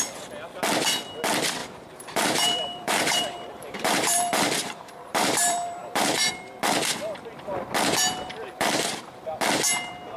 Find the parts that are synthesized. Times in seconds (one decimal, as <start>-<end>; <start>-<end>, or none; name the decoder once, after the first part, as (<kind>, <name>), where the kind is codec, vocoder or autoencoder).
1.6-6.3 (vocoder, BigVGAN v2)